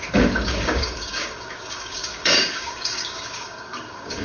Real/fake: fake